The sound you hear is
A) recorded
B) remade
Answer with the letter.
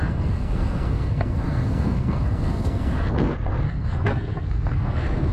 B